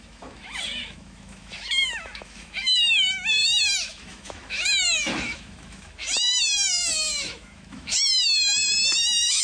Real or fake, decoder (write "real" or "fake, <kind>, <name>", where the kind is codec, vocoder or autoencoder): fake, autoencoder, DAC-VAE